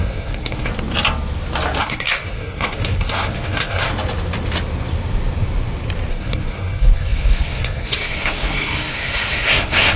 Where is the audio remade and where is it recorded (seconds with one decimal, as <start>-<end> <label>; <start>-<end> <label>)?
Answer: 0.0-0.7 remade; 0.7-1.8 recorded; 1.8-3.9 remade; 3.9-6.1 recorded; 6.1-10.0 remade